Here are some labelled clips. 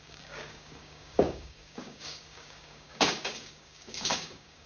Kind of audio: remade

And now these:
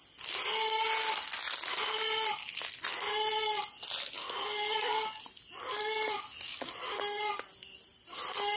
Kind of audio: recorded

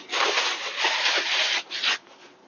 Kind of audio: recorded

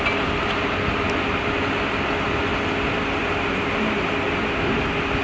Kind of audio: recorded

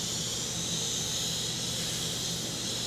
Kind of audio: recorded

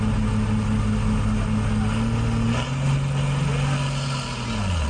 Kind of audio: recorded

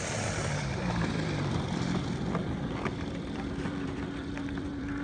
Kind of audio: remade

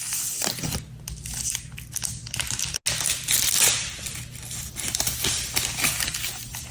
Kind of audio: recorded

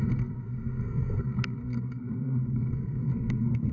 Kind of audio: remade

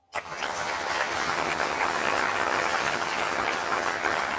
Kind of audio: remade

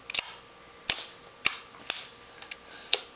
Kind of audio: recorded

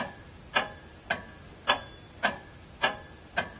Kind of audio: remade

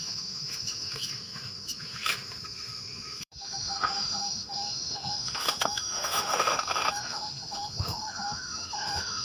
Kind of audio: remade